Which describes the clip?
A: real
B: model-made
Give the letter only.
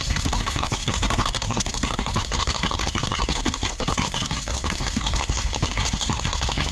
B